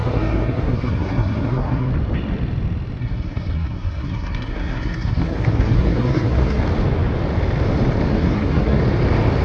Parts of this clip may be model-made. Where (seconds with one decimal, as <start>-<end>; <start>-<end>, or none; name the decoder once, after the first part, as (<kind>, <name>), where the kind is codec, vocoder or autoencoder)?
0.0-1.9 (codec, SNAC); 3.0-6.6; 8.1-8.8